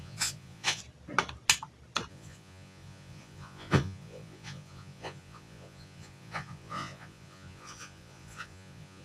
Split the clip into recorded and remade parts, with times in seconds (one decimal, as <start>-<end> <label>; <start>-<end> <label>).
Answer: 0.0-0.8 remade; 0.8-2.1 recorded; 2.1-9.0 remade